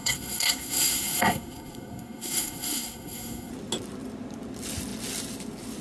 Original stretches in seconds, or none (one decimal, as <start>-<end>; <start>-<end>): 3.5-5.8